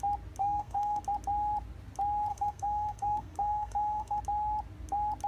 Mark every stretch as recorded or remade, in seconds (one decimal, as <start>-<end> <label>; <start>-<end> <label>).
0.0-0.4 recorded; 0.4-1.0 remade; 1.0-2.3 recorded; 2.3-4.2 remade; 4.2-5.3 recorded